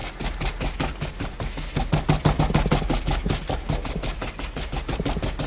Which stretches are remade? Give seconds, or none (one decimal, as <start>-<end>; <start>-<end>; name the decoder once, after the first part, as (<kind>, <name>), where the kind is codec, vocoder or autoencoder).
none